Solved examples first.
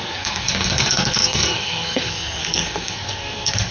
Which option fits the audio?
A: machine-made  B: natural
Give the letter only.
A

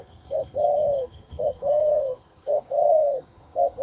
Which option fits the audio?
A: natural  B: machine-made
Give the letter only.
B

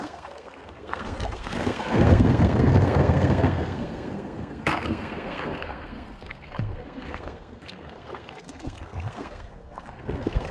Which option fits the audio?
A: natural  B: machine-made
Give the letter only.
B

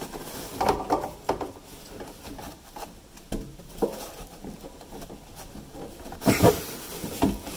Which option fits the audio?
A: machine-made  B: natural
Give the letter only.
B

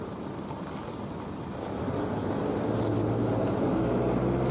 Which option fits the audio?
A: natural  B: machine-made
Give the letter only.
A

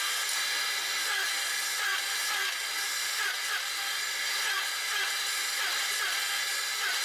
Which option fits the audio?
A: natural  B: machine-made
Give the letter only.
A